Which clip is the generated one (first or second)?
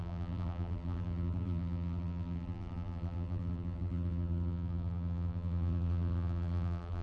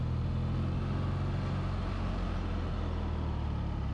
first